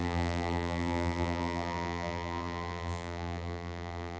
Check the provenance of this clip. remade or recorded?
remade